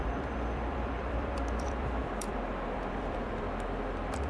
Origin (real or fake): fake